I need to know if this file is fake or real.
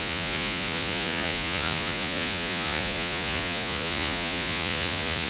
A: fake